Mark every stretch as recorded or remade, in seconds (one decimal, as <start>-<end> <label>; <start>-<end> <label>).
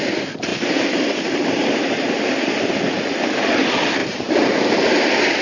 0.0-0.5 recorded; 0.5-2.1 remade; 2.1-4.0 recorded; 4.0-4.8 remade; 4.8-5.4 recorded